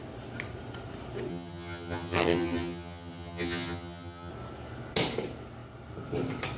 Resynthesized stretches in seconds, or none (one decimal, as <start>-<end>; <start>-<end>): 1.3-4.3